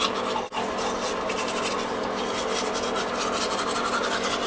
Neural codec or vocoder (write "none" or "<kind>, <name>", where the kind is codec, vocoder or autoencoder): none